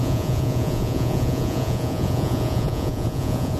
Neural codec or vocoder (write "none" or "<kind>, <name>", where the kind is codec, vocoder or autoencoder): vocoder, Vocos